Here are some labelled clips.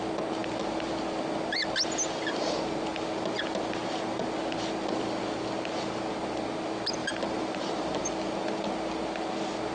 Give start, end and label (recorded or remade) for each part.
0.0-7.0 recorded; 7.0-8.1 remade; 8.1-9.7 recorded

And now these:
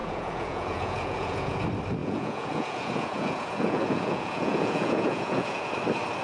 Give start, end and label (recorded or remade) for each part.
0.0-1.6 remade; 1.6-2.0 recorded; 2.0-5.7 remade; 5.7-6.2 recorded

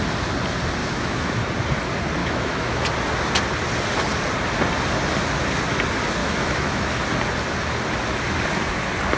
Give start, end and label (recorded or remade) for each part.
0.0-0.8 recorded; 0.8-1.5 remade; 1.5-2.2 recorded; 2.2-2.8 remade; 2.8-6.2 recorded; 6.2-7.0 remade; 7.0-9.2 recorded

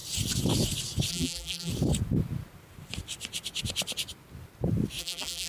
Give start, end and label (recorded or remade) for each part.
0.0-1.1 recorded; 1.1-1.7 remade; 1.7-5.0 recorded; 5.0-5.5 remade

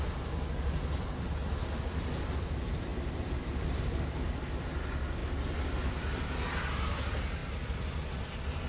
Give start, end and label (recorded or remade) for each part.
0.0-2.9 recorded; 2.9-3.4 remade; 3.4-5.2 recorded; 5.2-5.9 remade; 5.9-8.7 recorded

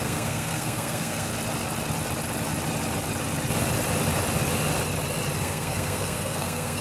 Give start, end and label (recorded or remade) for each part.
0.0-1.3 remade; 1.3-5.4 recorded; 5.4-6.8 remade